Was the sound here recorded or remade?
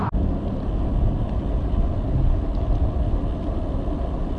recorded